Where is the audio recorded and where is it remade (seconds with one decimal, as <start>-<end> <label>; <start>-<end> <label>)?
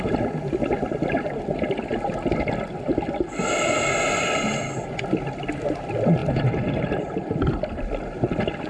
0.0-8.7 recorded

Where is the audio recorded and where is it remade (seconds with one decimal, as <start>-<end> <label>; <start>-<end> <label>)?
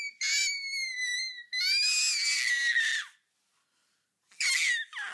0.0-5.1 recorded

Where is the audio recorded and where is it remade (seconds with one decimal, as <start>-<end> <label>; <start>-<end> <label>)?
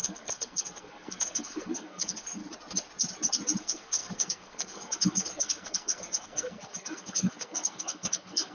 0.0-2.4 remade; 2.4-3.6 recorded; 3.6-8.5 remade